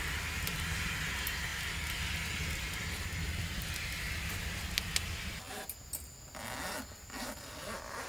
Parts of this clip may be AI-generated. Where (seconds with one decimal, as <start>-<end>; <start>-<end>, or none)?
none